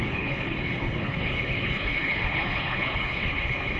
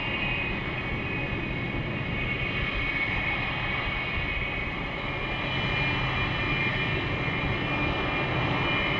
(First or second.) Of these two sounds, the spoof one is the first